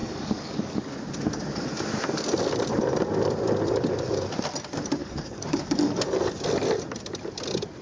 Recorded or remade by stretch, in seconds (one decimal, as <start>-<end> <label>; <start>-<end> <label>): 0.0-0.9 remade; 0.9-5.0 recorded; 5.0-6.0 remade; 6.0-7.8 recorded